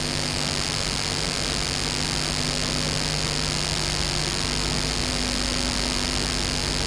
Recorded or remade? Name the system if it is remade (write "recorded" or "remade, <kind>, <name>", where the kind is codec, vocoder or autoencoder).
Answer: recorded